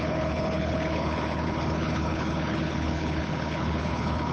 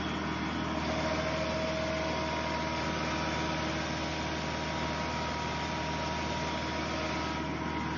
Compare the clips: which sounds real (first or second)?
second